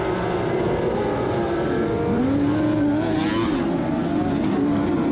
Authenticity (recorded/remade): recorded